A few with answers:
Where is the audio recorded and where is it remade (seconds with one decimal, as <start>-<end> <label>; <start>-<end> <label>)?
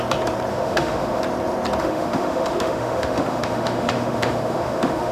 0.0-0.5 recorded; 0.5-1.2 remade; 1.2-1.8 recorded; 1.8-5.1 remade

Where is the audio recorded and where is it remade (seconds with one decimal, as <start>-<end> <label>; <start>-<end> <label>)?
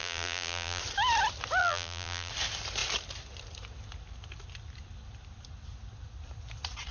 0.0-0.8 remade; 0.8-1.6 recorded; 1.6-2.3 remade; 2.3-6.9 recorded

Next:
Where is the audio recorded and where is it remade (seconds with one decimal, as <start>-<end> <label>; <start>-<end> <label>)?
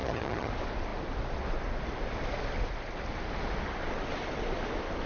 0.0-0.5 remade; 0.5-5.1 recorded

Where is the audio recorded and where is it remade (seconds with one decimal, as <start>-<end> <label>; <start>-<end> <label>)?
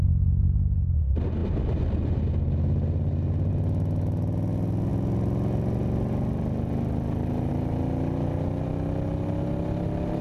0.0-10.2 recorded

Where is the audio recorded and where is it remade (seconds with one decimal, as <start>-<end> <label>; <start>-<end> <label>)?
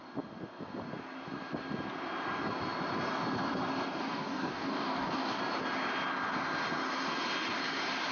0.0-4.0 recorded; 4.0-5.4 remade; 5.4-8.1 recorded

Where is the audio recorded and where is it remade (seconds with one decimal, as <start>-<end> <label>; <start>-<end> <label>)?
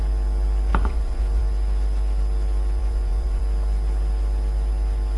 0.0-0.7 recorded; 0.7-1.4 remade; 1.4-2.8 recorded; 2.8-3.4 remade; 3.4-5.2 recorded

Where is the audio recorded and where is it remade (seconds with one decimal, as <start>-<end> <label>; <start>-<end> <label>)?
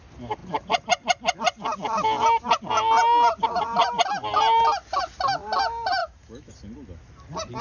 0.0-6.0 recorded; 6.0-6.5 remade; 6.5-7.6 recorded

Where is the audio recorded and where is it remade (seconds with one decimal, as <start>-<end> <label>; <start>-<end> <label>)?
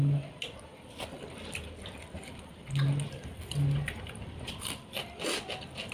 0.0-5.9 recorded